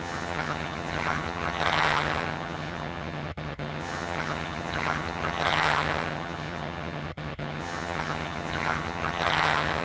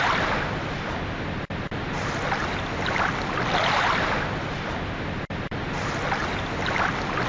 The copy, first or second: first